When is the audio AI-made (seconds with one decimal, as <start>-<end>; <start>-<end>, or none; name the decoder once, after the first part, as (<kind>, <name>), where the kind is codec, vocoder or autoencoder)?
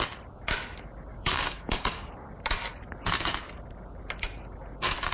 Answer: 1.1-2.1 (codec, DAC)